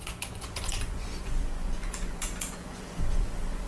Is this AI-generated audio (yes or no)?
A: yes